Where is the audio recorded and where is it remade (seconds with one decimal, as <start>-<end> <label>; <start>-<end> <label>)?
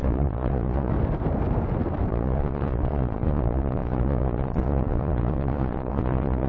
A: 0.0-0.9 remade; 0.9-2.1 recorded; 2.1-6.5 remade